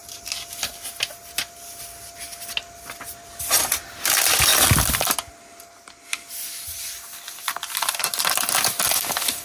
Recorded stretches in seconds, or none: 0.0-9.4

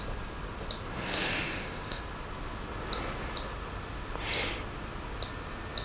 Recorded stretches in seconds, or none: 0.0-1.1; 2.0-5.8

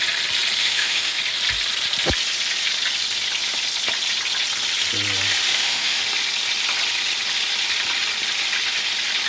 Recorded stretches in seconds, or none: 0.0-0.6; 1.2-5.5; 6.0-9.3

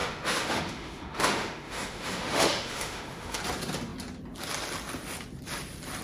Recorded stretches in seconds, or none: 3.4-6.0

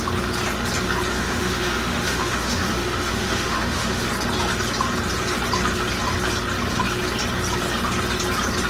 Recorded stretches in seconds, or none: 0.0-1.1; 4.1-8.7

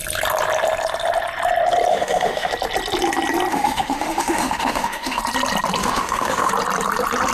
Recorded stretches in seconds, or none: 0.0-1.9; 2.5-3.5; 5.2-5.8; 6.5-7.3

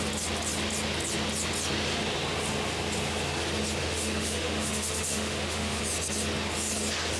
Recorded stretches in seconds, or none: 0.0-3.8; 5.8-7.2